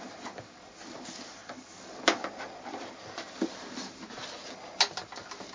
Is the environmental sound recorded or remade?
recorded